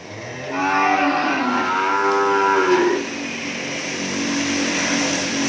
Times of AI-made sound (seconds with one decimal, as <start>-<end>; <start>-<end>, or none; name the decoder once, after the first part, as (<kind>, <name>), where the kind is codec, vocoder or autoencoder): 0.6-1.4 (codec, DAC)